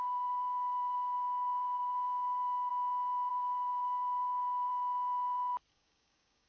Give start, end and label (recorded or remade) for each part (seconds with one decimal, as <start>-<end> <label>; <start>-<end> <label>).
0.0-2.7 remade; 2.7-3.3 recorded; 3.3-4.7 remade; 4.7-5.7 recorded; 5.7-6.5 remade